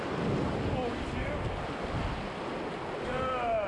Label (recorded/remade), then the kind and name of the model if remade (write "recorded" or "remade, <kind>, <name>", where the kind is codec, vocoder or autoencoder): recorded